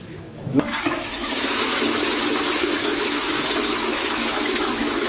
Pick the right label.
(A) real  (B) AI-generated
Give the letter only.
B